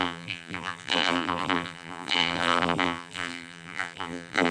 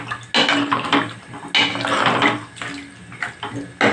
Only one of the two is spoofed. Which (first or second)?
first